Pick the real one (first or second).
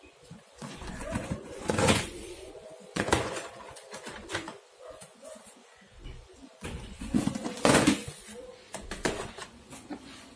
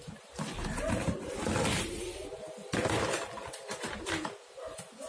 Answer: second